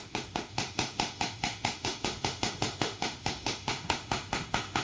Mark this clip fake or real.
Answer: fake